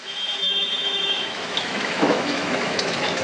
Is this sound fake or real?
fake